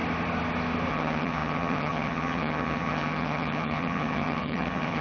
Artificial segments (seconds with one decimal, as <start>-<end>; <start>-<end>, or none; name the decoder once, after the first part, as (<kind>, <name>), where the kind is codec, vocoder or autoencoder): 0.9-5.0 (vocoder, HiFi-GAN)